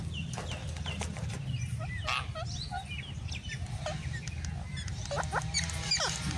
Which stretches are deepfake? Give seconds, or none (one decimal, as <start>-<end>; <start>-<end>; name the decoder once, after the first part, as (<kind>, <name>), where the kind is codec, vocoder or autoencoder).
none